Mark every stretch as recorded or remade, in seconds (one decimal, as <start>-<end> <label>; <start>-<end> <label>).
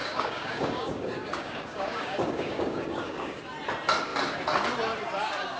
0.0-3.4 remade; 3.4-5.6 recorded